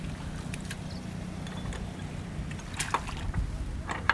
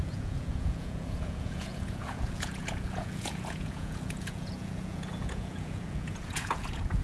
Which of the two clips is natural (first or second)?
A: first